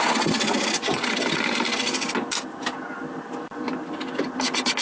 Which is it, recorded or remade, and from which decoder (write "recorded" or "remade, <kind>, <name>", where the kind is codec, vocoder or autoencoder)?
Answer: recorded